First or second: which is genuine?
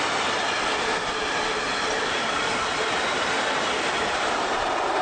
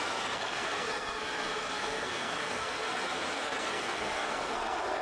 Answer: first